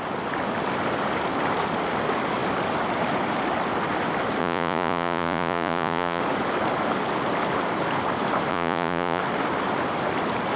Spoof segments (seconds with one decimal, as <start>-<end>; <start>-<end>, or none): 4.4-6.2; 8.5-9.2